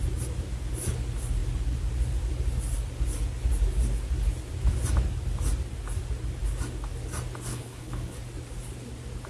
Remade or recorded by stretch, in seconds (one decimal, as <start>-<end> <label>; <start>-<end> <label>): 0.0-7.5 recorded; 7.5-8.2 remade; 8.2-9.3 recorded